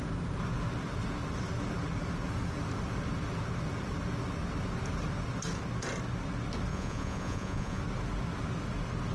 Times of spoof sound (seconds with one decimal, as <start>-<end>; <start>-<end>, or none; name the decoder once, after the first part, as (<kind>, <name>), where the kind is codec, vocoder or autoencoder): 6.7-7.8 (vocoder, Vocos)